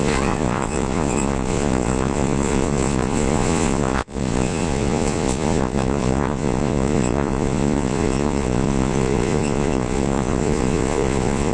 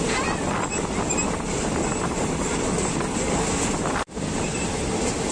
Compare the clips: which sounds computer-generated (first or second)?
first